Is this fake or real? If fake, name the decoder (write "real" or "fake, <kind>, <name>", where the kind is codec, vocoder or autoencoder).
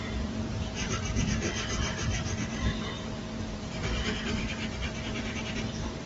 fake, vocoder, BigVGAN v2